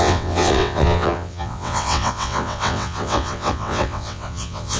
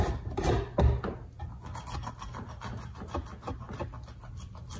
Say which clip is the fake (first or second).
first